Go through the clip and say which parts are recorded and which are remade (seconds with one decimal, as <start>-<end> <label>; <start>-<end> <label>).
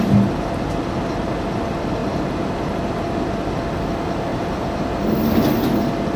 0.0-2.0 recorded; 2.0-3.0 remade; 3.0-4.3 recorded; 4.3-5.0 remade; 5.0-6.2 recorded